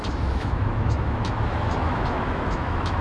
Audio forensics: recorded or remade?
remade